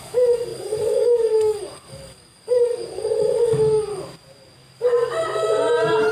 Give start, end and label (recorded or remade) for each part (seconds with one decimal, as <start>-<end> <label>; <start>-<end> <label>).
0.0-3.9 remade; 3.9-6.1 recorded